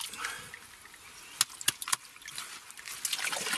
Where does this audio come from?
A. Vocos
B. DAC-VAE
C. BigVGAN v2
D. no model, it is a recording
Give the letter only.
D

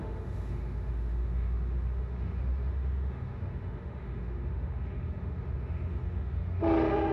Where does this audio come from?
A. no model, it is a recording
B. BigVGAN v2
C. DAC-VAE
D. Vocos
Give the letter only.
C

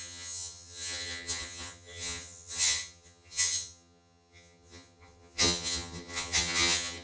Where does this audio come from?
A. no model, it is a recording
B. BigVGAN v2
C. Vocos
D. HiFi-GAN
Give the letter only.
D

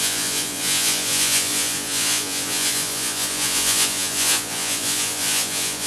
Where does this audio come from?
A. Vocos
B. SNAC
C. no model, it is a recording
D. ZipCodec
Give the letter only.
A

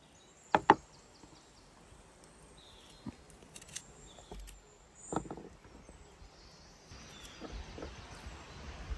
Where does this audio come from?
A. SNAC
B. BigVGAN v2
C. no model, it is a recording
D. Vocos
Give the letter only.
C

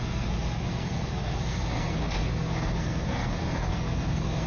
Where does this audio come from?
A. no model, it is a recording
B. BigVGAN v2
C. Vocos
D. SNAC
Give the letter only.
D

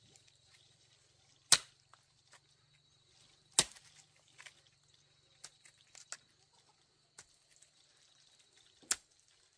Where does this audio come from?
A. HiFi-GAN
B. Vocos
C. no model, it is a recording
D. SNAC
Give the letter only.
C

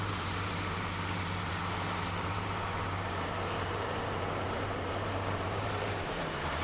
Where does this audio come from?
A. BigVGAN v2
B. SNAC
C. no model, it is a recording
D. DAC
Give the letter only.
A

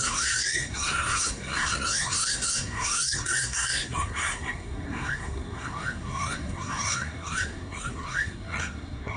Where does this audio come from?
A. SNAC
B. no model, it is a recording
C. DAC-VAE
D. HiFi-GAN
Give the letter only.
A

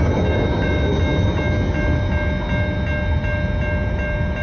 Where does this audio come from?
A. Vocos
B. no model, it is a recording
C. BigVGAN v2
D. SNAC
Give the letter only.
B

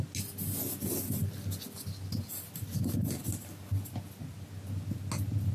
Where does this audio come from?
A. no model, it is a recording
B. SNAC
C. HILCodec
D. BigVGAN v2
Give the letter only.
A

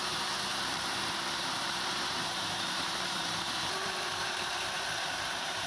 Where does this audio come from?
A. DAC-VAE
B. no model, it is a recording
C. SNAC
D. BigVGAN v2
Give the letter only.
D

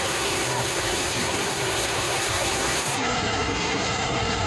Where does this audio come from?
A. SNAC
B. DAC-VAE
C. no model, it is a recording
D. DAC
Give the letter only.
A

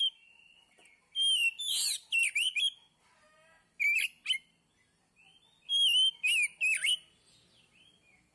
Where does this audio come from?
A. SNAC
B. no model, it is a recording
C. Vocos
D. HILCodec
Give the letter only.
B